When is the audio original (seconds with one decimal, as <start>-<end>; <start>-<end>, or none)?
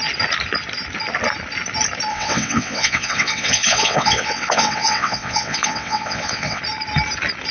0.0-2.1; 6.6-7.5